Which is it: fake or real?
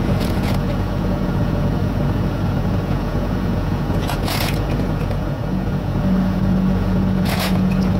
fake